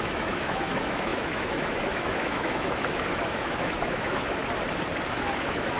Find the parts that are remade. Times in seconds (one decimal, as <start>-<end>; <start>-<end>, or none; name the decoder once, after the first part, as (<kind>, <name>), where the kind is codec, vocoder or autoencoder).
0.0-4.4 (autoencoder, DAC-VAE); 5.1-5.8

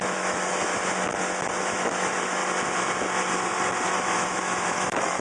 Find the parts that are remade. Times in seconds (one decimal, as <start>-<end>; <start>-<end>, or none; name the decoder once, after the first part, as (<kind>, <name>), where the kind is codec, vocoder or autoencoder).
0.0-0.7 (autoencoder, DAC-VAE); 1.6-2.4; 3.9-5.2